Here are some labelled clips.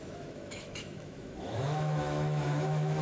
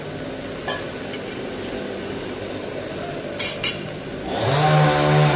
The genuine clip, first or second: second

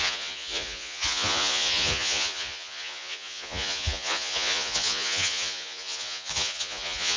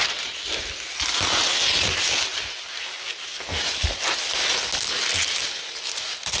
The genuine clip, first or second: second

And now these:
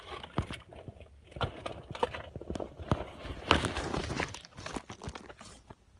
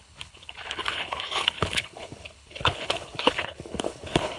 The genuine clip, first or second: first